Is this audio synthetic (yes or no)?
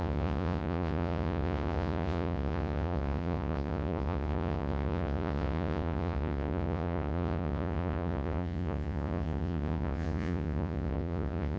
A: yes